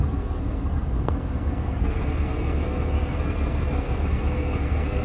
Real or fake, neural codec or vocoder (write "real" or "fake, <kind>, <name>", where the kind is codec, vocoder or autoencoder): fake, codec, SNAC